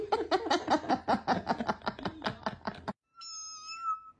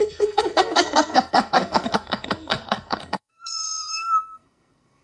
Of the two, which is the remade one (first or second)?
second